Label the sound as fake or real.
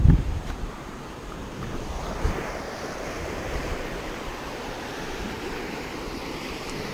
fake